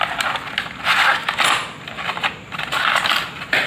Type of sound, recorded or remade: recorded